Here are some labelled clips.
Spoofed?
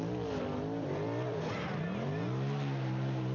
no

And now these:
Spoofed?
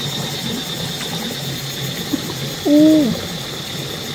no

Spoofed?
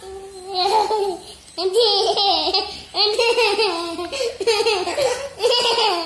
no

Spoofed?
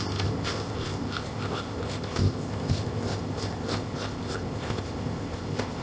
yes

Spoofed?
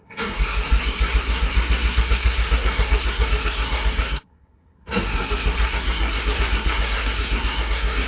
yes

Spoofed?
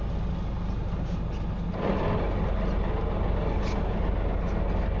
no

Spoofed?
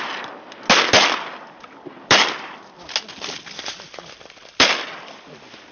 no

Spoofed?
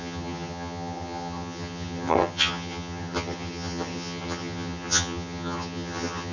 yes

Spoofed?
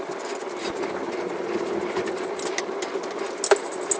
no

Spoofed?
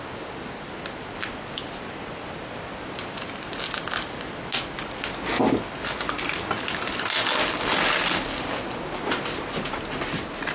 no